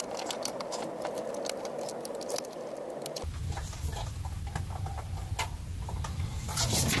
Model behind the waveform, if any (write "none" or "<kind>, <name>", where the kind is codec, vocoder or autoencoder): none